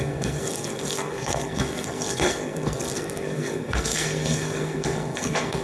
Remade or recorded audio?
remade